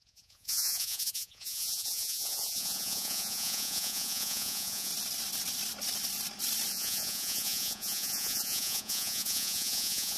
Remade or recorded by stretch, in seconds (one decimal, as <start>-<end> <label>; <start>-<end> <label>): 0.0-4.9 remade; 4.9-6.7 recorded; 6.7-10.2 remade